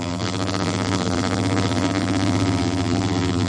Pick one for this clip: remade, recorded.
remade